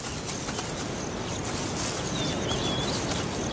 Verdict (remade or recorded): recorded